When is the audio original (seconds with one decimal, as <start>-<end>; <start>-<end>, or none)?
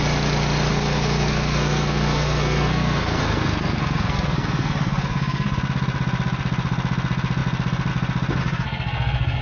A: 0.0-0.7; 5.6-8.4